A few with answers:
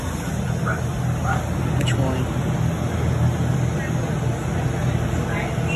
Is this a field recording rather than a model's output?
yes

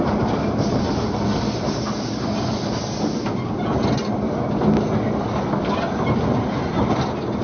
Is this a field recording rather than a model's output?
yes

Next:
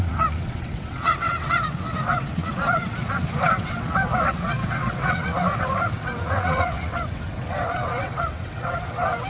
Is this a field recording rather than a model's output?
no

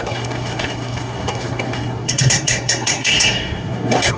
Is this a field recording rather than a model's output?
no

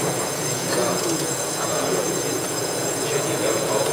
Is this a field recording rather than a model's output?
no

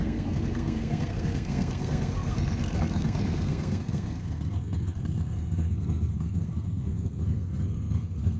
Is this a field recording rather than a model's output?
no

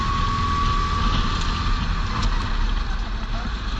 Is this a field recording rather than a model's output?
yes